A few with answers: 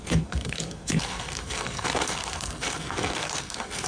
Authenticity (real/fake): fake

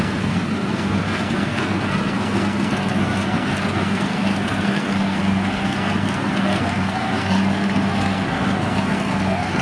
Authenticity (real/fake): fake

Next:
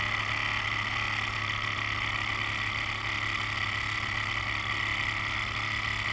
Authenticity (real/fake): real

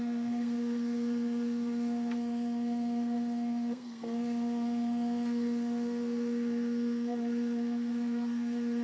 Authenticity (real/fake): fake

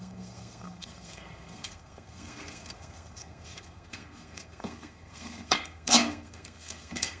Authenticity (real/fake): fake